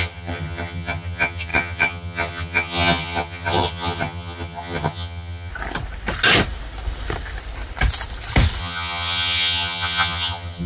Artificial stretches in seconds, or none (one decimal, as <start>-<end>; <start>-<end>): 0.0-5.5; 8.6-10.7